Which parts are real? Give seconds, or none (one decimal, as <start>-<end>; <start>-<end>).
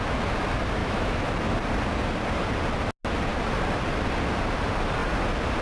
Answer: 0.0-0.8; 1.3-5.6